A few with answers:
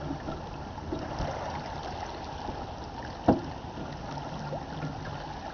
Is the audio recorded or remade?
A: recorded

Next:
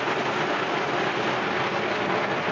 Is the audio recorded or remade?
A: recorded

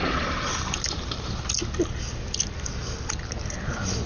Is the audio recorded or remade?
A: recorded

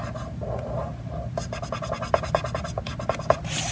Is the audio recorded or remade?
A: recorded